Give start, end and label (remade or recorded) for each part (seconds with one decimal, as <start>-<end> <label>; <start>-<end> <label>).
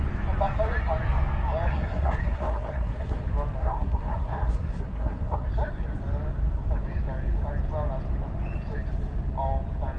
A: 0.0-1.7 recorded; 1.7-3.2 remade; 3.2-3.6 recorded; 3.6-5.5 remade; 5.5-10.0 recorded